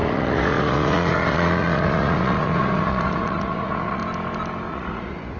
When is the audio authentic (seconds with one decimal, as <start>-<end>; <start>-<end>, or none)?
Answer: 4.0-4.7

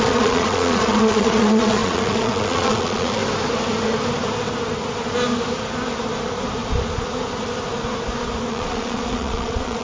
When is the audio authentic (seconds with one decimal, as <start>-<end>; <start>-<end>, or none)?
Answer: 3.2-8.5